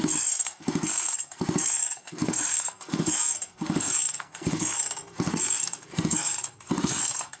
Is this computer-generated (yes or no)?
yes